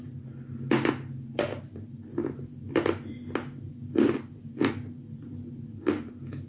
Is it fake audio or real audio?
real